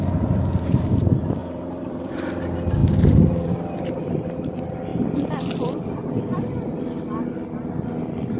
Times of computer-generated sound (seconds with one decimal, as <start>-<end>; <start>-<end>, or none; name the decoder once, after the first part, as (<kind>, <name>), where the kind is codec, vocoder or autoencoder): 1.4-2.4 (vocoder, BigVGAN v2); 2.8-3.5; 4.9-5.5